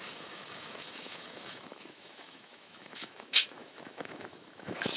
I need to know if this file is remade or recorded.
remade